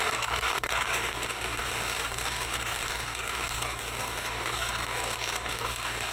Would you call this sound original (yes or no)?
no